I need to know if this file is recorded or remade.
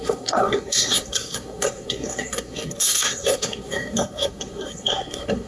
remade